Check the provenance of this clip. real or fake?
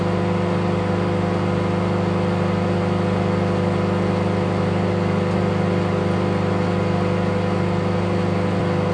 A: real